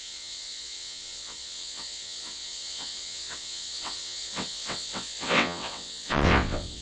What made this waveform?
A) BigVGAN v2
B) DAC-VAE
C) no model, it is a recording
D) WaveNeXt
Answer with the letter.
D